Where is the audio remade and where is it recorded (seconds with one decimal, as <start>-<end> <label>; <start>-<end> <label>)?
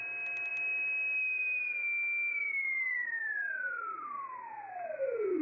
0.0-5.4 recorded